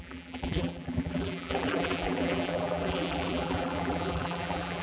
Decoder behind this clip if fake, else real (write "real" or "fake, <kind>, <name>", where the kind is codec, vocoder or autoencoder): fake, vocoder, BigVGAN v2